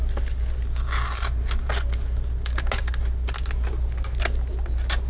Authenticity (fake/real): real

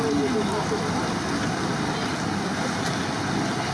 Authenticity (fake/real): real